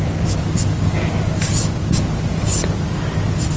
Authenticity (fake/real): real